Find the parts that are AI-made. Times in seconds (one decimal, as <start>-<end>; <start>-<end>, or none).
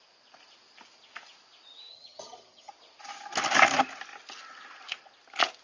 1.9-2.7